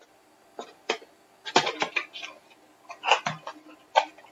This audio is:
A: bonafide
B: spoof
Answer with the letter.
A